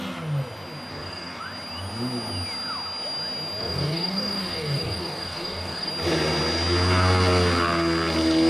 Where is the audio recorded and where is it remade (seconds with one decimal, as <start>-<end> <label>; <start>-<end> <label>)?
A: 0.0-0.9 recorded; 0.9-1.4 remade; 1.4-3.6 recorded; 3.6-5.9 remade; 5.9-8.5 recorded

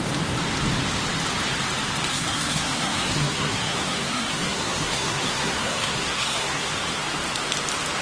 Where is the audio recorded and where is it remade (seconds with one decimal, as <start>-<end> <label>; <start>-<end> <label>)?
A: 0.0-2.1 recorded; 2.1-6.7 remade; 6.7-8.0 recorded